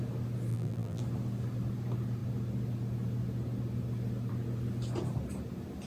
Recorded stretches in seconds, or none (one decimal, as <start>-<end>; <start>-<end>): 0.0-0.5; 1.0-5.9